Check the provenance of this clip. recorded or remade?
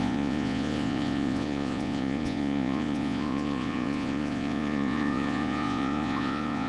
remade